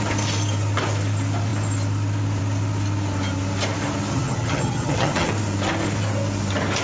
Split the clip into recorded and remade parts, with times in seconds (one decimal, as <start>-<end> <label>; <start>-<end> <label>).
0.0-4.1 recorded; 4.1-5.3 remade; 5.3-6.8 recorded